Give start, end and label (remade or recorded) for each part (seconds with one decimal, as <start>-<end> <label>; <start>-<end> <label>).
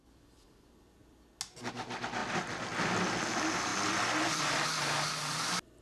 0.0-5.8 recorded